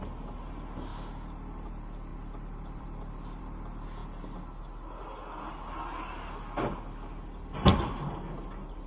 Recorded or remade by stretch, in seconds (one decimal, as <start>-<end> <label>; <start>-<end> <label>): 0.0-0.9 recorded; 0.9-1.7 remade; 1.7-2.1 recorded; 2.1-3.4 remade; 3.4-4.0 recorded; 4.0-4.6 remade; 4.6-7.7 recorded; 7.7-8.2 remade; 8.2-8.9 recorded